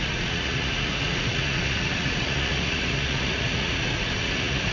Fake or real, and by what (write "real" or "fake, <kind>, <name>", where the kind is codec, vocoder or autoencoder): fake, vocoder, Vocos